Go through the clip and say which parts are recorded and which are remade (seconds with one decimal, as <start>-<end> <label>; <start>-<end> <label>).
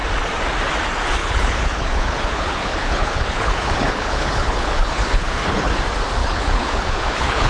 0.0-1.2 recorded; 1.2-5.7 remade; 5.7-6.2 recorded; 6.2-7.5 remade